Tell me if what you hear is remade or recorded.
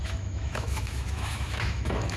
remade